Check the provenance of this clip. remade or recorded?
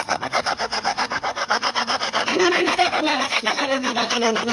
remade